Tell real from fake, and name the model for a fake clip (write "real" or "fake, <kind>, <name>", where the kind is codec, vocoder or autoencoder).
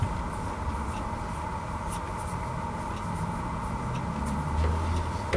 real